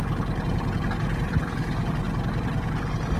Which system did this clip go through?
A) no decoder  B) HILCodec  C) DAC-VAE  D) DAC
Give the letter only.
A